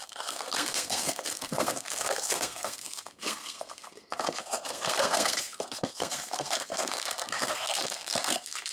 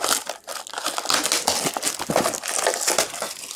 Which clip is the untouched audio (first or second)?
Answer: second